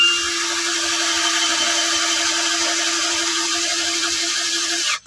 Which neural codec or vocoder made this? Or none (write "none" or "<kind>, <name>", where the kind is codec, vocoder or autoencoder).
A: none